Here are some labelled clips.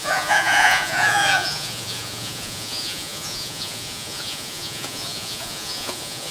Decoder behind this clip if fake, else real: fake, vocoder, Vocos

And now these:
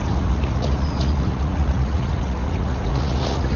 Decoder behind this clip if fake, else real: fake, vocoder, Vocos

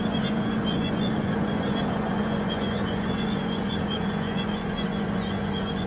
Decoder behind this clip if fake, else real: fake, vocoder, Vocos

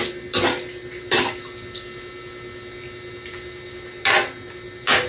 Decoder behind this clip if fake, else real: real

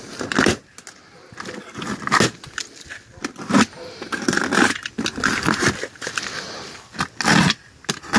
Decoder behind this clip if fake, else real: real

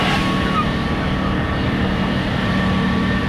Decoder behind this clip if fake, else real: real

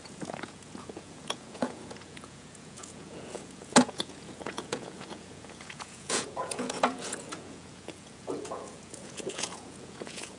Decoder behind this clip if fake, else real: fake, vocoder, Vocos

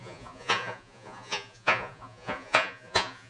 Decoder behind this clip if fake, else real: fake, vocoder, Vocos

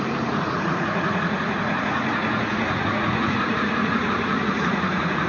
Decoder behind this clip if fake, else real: fake, vocoder, Vocos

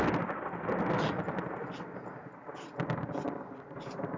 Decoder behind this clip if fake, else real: real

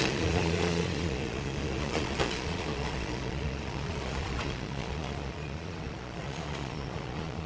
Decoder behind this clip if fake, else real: fake, vocoder, Vocos